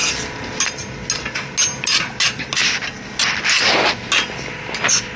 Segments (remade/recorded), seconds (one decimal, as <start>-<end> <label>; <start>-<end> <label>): 0.0-5.2 recorded